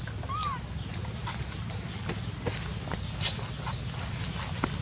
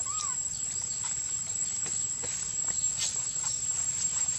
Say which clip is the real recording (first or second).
first